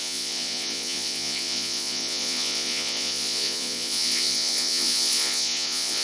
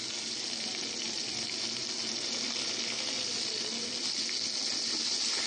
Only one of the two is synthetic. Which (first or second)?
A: first